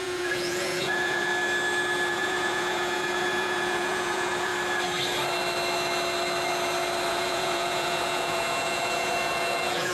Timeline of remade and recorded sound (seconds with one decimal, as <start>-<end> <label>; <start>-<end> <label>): 0.0-1.3 remade; 1.3-2.1 recorded; 2.1-4.5 remade; 4.5-7.1 recorded; 7.1-9.9 remade